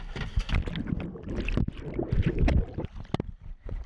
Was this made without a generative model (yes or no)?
yes